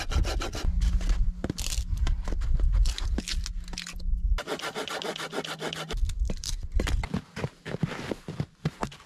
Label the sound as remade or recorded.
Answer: recorded